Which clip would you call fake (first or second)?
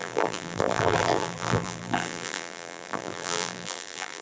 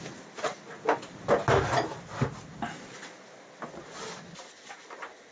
first